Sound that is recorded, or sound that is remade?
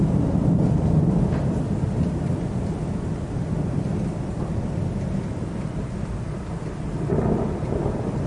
recorded